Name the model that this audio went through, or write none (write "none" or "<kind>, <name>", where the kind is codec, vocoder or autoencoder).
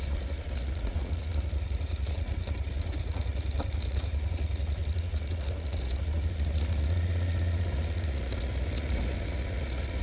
vocoder, Vocos